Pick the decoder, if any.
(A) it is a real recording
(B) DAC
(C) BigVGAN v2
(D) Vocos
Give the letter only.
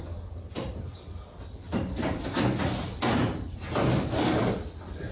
A